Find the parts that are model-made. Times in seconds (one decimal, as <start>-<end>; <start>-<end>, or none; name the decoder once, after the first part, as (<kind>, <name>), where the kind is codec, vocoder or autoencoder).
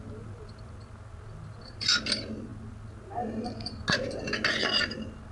none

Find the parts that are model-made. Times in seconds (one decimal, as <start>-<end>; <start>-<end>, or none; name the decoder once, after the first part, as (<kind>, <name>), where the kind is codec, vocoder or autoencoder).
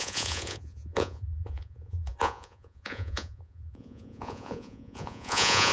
0.0-5.7 (vocoder, Vocos)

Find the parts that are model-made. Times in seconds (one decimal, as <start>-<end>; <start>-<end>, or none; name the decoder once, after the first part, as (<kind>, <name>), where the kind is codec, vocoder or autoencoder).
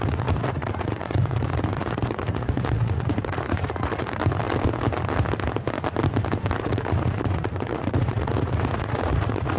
0.0-4.2 (vocoder, Vocos); 6.6-9.6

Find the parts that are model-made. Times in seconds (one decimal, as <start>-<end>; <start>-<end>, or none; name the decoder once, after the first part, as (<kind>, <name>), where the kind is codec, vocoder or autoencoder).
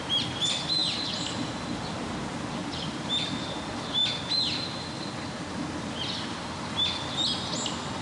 none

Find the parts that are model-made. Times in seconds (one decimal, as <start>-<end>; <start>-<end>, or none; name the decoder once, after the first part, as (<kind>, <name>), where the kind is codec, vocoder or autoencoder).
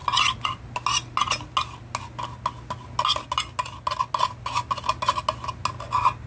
none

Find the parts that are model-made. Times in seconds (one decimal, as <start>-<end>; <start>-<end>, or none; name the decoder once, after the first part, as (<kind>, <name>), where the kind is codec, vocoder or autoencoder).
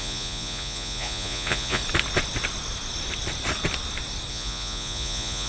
0.0-1.8 (vocoder, Vocos); 4.3-5.5